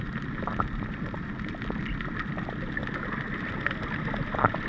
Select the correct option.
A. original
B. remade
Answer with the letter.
A